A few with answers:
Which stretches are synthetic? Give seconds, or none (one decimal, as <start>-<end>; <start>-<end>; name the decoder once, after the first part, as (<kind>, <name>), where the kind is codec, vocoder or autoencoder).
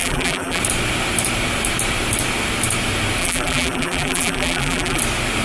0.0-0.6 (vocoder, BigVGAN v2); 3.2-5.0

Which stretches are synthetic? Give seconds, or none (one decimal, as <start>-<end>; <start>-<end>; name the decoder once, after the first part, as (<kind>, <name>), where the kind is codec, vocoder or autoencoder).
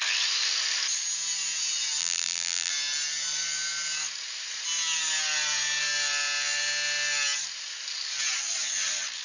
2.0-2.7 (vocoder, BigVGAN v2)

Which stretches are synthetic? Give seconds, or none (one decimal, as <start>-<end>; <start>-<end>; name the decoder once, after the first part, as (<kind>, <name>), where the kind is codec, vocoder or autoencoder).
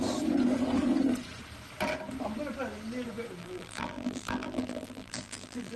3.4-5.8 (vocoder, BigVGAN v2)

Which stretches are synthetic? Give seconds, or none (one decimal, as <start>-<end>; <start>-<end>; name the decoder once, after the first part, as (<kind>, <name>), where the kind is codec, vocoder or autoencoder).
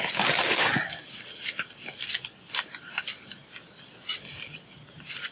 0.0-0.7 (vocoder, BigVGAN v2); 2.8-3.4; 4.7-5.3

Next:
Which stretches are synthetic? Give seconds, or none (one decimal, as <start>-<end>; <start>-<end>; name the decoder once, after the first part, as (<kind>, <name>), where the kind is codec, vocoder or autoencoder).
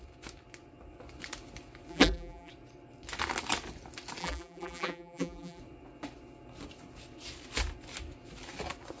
1.9-2.5 (vocoder, BigVGAN v2); 4.2-5.6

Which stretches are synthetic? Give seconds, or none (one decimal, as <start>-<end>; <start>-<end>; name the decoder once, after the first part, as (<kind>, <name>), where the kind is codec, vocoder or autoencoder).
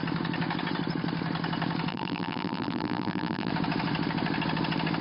1.9-3.5 (vocoder, BigVGAN v2)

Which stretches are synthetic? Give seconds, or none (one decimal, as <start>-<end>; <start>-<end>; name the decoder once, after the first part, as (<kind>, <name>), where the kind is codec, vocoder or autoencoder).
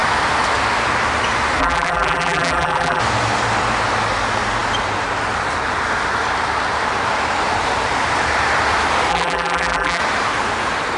1.6-3.0 (vocoder, BigVGAN v2); 9.1-10.0